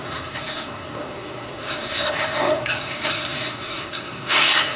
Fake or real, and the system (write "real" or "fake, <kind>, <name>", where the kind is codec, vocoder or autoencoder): fake, codec, SNAC